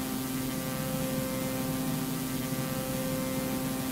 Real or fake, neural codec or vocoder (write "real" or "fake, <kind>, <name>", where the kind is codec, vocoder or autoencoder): real